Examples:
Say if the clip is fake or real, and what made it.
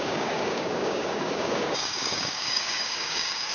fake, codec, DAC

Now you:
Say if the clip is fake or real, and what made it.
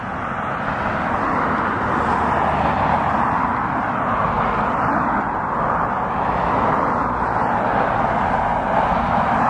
real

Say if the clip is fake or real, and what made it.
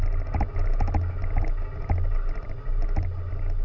real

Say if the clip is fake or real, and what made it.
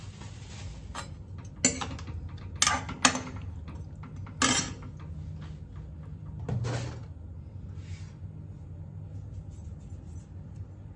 real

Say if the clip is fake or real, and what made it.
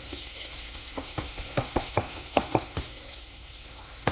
fake, codec, SNAC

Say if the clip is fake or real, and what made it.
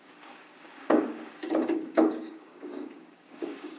fake, codec, DAC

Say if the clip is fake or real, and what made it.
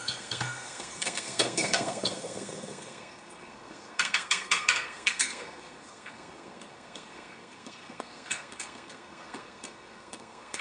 fake, codec, SNAC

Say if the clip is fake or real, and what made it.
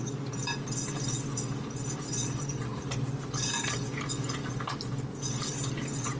real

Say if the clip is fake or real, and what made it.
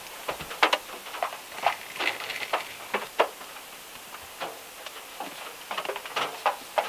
real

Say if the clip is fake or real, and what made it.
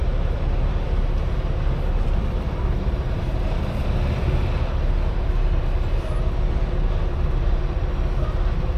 fake, vocoder, BigVGAN v2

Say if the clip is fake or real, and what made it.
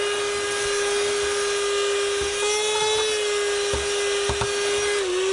real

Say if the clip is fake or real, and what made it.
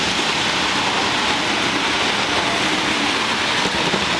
real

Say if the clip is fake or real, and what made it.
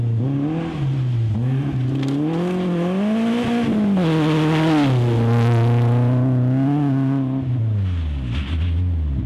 real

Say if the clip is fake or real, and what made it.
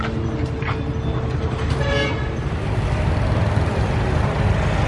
real